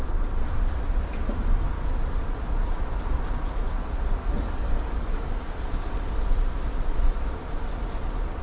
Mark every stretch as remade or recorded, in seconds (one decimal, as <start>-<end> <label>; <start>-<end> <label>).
0.0-4.2 recorded; 4.2-5.6 remade; 5.6-8.4 recorded